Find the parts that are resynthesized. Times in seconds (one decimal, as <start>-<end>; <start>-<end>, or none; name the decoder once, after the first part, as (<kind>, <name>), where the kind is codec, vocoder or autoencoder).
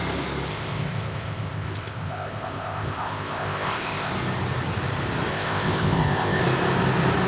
0.5-4.1 (codec, ZipCodec); 5.3-6.4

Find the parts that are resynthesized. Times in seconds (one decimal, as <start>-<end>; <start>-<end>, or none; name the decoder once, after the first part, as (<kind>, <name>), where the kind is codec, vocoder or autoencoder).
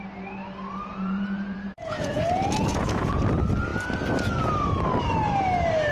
0.9-3.2 (vocoder, Vocos)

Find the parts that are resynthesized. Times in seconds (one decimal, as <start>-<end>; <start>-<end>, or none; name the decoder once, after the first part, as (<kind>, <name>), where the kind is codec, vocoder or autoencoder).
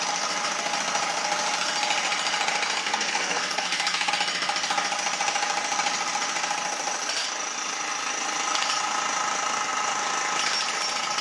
2.8-4.1 (codec, SNAC)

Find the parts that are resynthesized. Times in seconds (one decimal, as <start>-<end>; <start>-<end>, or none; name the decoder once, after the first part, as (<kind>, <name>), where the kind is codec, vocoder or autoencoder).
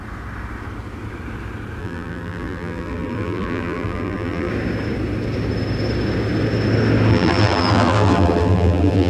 1.8-4.5 (vocoder, BigVGAN v2); 7.1-9.1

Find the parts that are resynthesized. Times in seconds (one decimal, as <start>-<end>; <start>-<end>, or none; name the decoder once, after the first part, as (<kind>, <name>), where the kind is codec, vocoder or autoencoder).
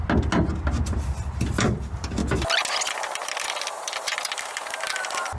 0.8-2.2 (vocoder, BigVGAN v2); 2.9-5.4